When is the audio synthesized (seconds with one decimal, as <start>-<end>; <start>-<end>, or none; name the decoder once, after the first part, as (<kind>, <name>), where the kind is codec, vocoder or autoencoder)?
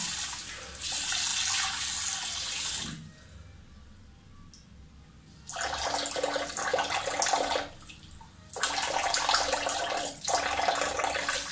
0.7-1.3 (vocoder, BigVGAN v2); 6.1-6.7; 7.3-11.5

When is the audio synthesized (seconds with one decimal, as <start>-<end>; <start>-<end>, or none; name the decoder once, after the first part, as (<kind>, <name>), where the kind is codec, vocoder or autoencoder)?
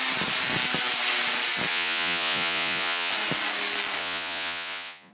1.7-3.1 (vocoder, Vocos); 4.0-5.1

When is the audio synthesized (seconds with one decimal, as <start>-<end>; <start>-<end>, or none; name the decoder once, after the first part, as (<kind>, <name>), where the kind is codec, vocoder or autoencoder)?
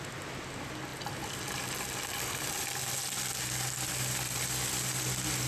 none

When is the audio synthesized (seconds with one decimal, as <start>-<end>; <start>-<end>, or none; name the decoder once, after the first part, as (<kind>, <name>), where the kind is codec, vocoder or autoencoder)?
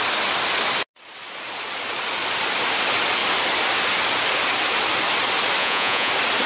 5.6-6.1 (vocoder, Vocos)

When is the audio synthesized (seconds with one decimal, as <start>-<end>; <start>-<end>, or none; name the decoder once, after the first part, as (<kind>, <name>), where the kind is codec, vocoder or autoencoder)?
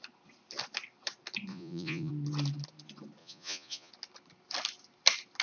1.5-2.1 (vocoder, Vocos); 3.2-3.9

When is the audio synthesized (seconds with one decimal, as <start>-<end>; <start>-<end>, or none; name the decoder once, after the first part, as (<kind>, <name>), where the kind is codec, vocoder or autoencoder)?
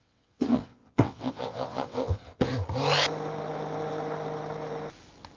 0.0-2.5 (vocoder, WaveNeXt)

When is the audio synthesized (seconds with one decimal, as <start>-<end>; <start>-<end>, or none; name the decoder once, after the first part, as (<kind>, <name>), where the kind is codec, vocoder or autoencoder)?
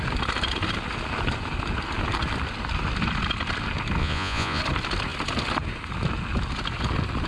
4.0-4.6 (vocoder, Vocos)